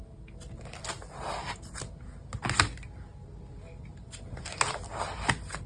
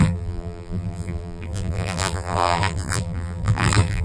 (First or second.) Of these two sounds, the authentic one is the first